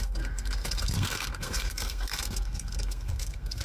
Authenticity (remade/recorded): remade